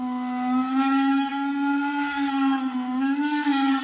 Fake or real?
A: fake